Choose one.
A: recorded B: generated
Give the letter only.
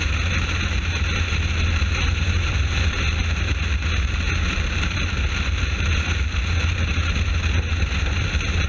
B